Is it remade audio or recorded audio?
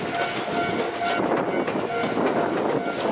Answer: recorded